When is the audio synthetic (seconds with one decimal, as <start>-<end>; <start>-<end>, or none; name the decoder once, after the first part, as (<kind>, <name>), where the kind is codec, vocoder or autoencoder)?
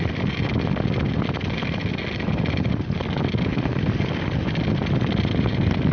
none